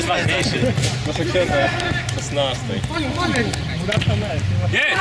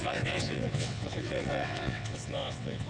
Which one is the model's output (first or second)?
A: second